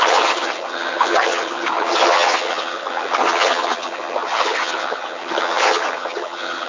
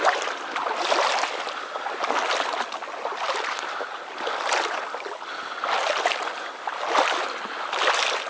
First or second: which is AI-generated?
first